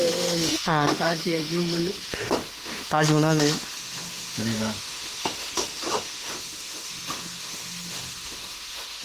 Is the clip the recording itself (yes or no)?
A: no